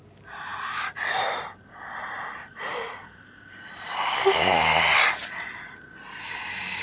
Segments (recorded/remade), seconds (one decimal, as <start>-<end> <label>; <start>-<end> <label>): 0.0-6.8 recorded